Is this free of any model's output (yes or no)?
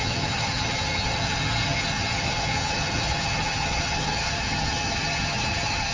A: no